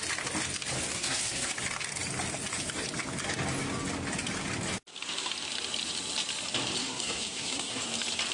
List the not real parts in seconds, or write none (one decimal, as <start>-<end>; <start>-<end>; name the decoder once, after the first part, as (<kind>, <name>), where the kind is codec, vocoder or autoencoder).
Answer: 0.9-1.5 (codec, SNAC); 6.8-7.8